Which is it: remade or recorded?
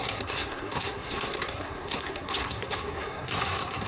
remade